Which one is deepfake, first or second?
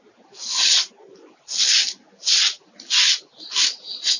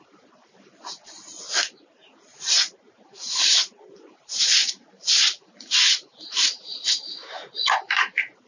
second